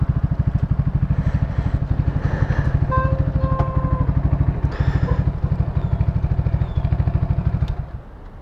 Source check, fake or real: real